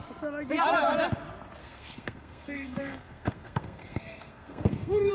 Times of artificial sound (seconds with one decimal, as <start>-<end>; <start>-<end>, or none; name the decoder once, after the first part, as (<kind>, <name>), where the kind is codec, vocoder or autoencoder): 1.6-5.1 (codec, SNAC)